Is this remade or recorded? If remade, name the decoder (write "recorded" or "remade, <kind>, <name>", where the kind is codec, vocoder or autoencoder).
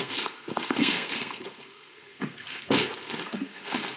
remade, codec, SNAC